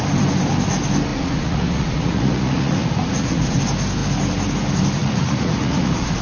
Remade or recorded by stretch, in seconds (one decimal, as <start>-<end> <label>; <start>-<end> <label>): 0.0-1.1 recorded; 1.1-3.6 remade; 3.6-5.0 recorded; 5.0-6.2 remade

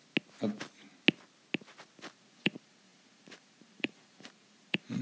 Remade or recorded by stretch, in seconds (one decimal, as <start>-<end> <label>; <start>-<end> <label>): 0.0-2.2 recorded; 2.2-5.0 remade